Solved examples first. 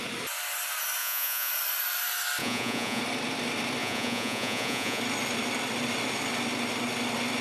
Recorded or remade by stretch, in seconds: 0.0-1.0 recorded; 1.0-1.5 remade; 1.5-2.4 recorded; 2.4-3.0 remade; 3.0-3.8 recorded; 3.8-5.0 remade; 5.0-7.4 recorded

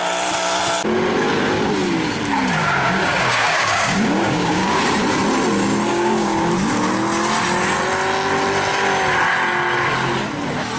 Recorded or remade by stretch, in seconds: 0.0-2.6 recorded; 2.6-4.8 remade; 4.8-5.9 recorded; 5.9-6.5 remade; 6.5-10.8 recorded

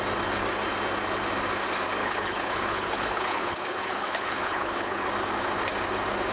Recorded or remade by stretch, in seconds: 0.0-2.0 recorded; 2.0-5.1 remade; 5.1-6.3 recorded

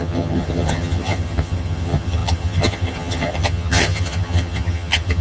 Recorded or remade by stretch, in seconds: 0.0-5.2 remade

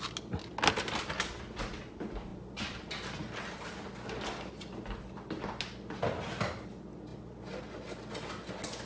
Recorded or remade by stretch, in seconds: 0.0-8.9 recorded

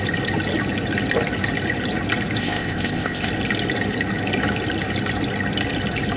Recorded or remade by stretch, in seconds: 0.0-2.4 recorded; 2.4-3.3 remade; 3.3-6.2 recorded

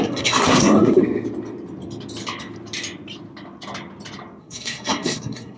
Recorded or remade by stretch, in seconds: 0.0-1.0 remade; 1.0-4.4 recorded; 4.4-5.6 remade

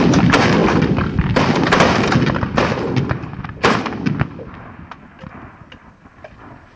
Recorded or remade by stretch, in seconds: 0.0-6.8 recorded